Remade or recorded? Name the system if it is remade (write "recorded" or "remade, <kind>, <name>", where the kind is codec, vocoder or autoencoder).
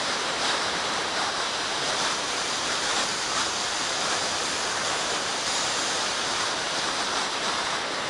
remade, vocoder, BigVGAN v2